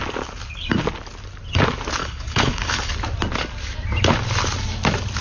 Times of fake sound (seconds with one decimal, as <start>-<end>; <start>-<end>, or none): 2.0-2.9